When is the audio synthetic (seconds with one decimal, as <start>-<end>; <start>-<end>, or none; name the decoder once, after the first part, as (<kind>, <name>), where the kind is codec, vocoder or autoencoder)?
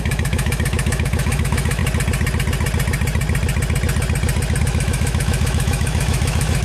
0.0-1.8 (autoencoder, DAC-VAE); 4.6-6.6